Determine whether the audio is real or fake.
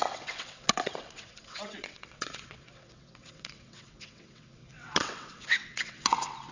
fake